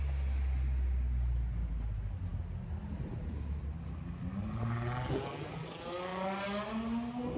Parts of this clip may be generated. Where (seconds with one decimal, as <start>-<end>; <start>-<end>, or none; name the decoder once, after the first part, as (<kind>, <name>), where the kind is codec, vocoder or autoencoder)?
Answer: none